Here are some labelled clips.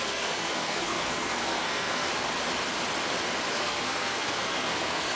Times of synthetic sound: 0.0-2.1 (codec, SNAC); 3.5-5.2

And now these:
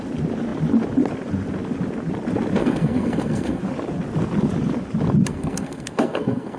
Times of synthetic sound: 2.6-3.6 (codec, SNAC); 5.3-6.6

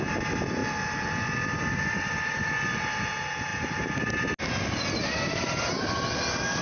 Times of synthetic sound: none

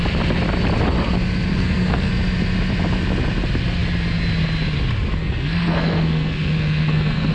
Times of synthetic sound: 1.5-2.1 (codec, SNAC); 5.2-7.3